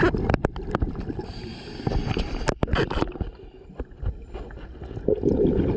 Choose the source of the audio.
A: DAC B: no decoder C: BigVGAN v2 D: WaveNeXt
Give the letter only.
B